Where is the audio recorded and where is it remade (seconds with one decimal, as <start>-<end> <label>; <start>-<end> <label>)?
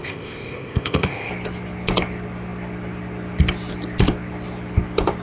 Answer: 0.0-1.3 remade; 1.3-5.2 recorded